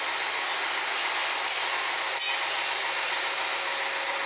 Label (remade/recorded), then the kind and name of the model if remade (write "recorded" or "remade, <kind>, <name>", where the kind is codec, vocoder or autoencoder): recorded